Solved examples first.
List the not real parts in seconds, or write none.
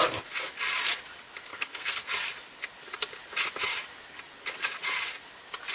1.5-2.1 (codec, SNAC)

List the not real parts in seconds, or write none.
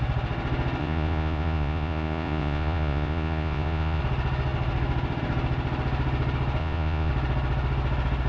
0.8-4.0 (vocoder, Vocos); 6.6-7.1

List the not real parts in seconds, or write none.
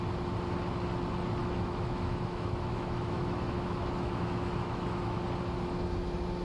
1.4-5.2 (autoencoder, DAC-VAE)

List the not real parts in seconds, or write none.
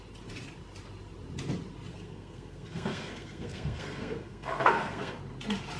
1.9-5.2 (codec, SNAC)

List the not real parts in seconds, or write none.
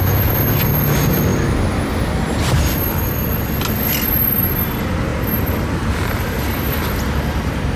none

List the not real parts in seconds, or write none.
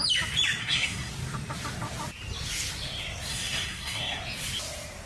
0.6-1.1 (codec, SNAC); 3.3-4.2